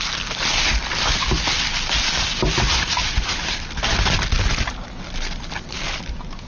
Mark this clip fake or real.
real